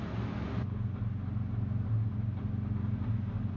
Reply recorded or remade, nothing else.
recorded